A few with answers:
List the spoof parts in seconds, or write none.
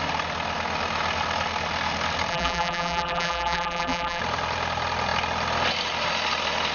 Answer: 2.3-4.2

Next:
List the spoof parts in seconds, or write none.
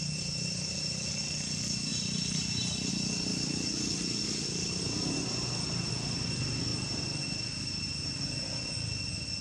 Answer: none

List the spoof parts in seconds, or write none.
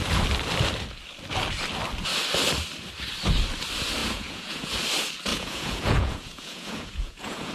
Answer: 4.0-4.7; 5.3-7.5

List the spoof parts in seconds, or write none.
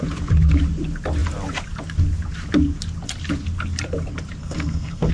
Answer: 4.4-5.1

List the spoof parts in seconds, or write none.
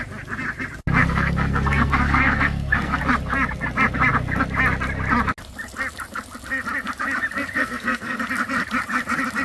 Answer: 1.0-3.0; 7.6-8.2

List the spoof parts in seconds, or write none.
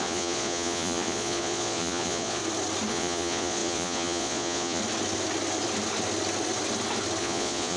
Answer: 0.0-2.4; 2.9-4.8; 7.2-7.8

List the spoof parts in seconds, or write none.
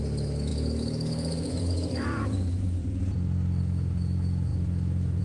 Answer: 0.0-2.8; 3.6-5.2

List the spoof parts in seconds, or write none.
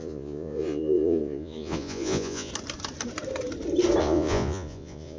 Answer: 0.0-2.5; 4.0-5.2